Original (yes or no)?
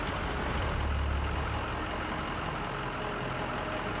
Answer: yes